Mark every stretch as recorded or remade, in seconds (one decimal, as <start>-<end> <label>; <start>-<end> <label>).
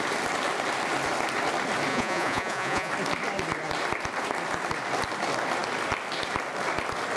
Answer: 0.0-1.9 recorded; 1.9-2.9 remade; 2.9-7.2 recorded